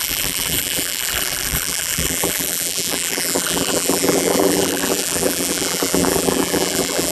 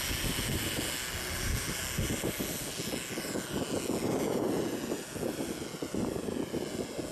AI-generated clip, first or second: first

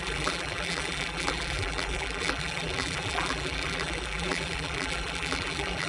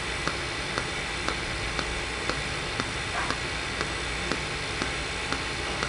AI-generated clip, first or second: first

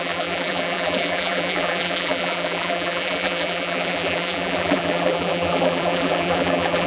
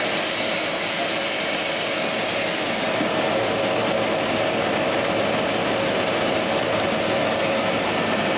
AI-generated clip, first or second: first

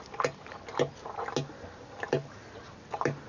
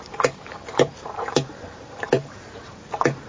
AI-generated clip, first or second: second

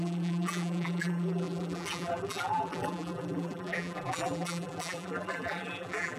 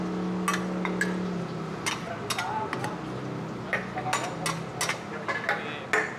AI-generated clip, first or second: first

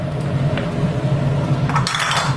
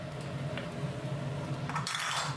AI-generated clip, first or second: first